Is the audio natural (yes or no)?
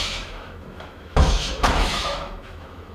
no